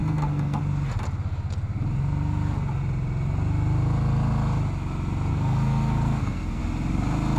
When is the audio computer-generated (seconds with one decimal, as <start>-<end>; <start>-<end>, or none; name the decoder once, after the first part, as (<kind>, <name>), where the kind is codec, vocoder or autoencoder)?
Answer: 0.0-0.6 (codec, SNAC); 5.3-6.6